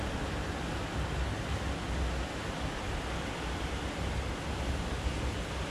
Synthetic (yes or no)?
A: no